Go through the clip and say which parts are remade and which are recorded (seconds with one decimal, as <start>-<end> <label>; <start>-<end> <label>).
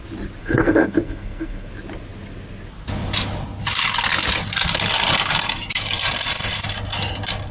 0.0-0.4 recorded; 0.4-1.7 remade; 1.7-7.5 recorded